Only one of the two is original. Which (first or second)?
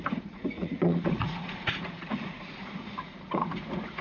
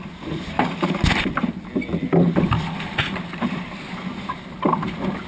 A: second